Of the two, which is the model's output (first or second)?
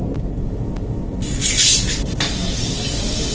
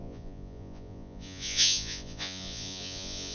second